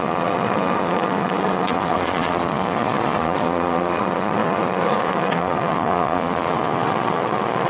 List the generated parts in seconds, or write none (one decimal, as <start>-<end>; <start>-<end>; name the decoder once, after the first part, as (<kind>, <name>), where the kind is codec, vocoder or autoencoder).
0.0-7.7 (vocoder, Vocos)